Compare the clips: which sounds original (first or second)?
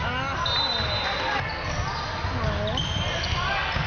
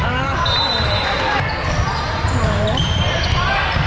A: first